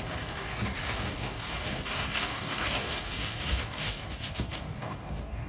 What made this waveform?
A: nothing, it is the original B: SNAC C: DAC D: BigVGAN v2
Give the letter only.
C